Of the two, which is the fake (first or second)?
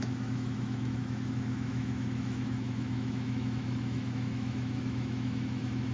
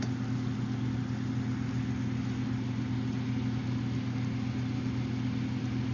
first